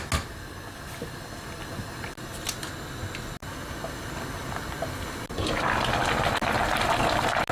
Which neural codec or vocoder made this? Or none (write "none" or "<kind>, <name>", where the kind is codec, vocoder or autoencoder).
none